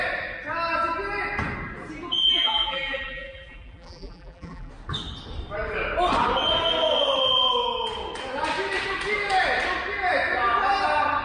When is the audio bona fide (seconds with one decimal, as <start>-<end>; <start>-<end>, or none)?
0.0-2.2; 4.7-11.2